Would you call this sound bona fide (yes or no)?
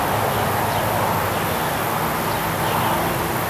yes